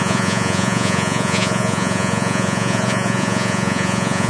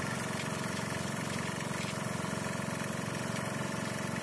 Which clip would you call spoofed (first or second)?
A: first